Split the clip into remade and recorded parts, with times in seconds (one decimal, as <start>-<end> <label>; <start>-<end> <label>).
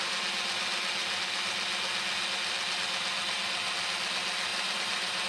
0.0-4.5 recorded; 4.5-5.3 remade